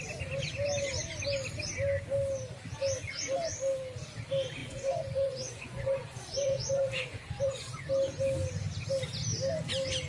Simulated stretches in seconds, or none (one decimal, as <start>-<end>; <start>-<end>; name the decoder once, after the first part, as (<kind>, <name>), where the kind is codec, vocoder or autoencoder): 4.6-7.9 (vocoder, Vocos)